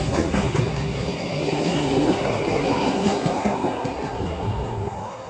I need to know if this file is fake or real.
fake